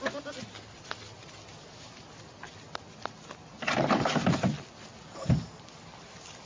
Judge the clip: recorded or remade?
recorded